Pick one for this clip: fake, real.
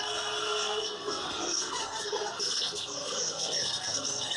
fake